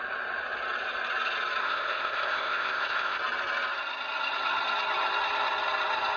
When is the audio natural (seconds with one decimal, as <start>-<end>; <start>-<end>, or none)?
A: 0.0-1.6; 3.2-6.2